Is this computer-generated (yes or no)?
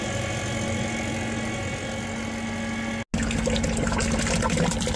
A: no